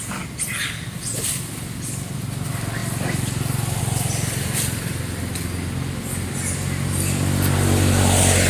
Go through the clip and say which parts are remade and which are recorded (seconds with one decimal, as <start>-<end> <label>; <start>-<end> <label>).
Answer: 0.0-8.5 recorded